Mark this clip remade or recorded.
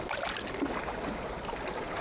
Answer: recorded